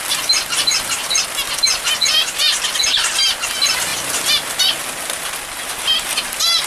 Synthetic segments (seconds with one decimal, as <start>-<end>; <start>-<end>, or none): none